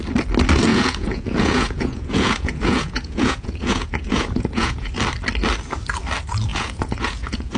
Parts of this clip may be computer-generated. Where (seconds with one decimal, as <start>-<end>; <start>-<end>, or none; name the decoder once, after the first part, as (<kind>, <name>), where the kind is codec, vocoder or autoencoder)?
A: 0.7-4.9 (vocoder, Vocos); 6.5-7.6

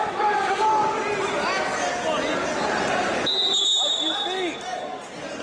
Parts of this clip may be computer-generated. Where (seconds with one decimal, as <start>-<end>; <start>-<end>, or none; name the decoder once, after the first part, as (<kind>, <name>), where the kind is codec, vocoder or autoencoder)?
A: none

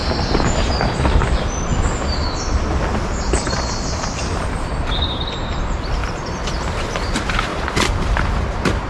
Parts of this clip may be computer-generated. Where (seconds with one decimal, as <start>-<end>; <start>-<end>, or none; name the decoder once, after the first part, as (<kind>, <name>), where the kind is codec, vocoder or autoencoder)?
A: 4.3-6.0 (vocoder, BigVGAN v2); 6.6-8.9